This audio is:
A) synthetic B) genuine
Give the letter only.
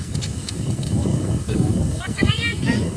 A